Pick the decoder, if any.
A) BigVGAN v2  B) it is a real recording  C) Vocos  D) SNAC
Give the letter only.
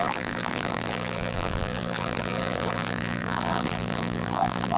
A